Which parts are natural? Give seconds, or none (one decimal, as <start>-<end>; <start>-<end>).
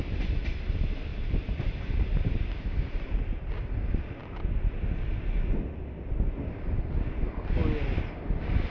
0.0-1.1; 1.8-4.2; 4.8-8.7